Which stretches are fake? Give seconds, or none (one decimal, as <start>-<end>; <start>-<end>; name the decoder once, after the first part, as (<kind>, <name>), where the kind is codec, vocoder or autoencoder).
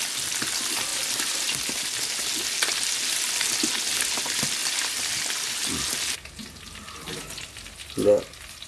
0.9-1.9 (vocoder, BigVGAN v2); 4.6-5.2